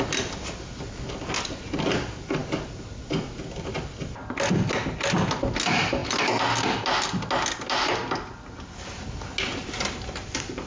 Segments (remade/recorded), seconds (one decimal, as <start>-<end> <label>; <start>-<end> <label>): 0.0-10.7 recorded